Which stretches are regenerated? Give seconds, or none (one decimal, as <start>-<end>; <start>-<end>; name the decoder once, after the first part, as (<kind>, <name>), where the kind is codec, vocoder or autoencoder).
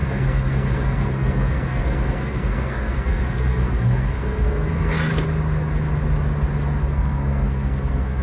0.0-5.1 (codec, SNAC); 6.8-8.2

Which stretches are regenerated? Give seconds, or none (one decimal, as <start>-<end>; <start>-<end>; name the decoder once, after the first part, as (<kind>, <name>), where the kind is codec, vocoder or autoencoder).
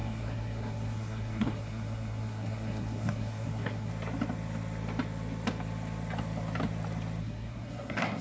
0.0-3.9 (codec, SNAC); 7.2-8.2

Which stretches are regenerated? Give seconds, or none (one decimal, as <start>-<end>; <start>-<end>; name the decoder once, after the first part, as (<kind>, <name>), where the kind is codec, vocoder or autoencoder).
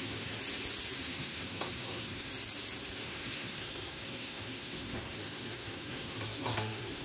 0.0-0.4 (codec, SNAC); 1.0-2.3; 3.0-7.0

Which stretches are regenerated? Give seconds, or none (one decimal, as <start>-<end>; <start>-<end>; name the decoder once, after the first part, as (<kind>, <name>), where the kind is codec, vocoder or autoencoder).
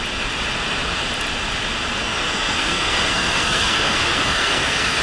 1.9-5.0 (codec, SNAC)